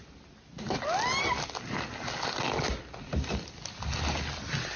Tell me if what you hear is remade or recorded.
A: recorded